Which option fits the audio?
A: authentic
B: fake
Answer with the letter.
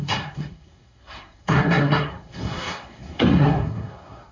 B